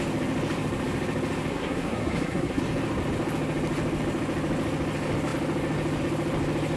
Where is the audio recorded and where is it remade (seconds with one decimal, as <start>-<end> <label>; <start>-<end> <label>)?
0.0-1.5 recorded; 1.5-2.6 remade; 2.6-6.8 recorded